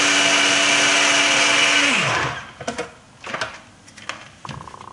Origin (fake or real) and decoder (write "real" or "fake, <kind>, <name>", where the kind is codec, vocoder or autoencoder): real